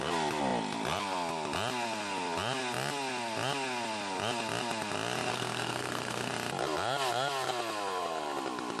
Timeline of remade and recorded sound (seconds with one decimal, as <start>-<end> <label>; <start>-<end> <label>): 0.0-5.3 recorded; 5.3-6.3 remade; 6.3-8.8 recorded

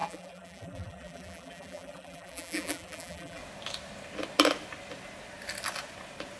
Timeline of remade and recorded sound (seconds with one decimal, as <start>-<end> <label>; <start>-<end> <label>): 0.0-3.4 remade; 3.4-6.4 recorded